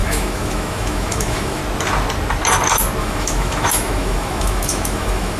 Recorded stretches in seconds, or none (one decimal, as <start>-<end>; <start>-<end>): 1.6-3.0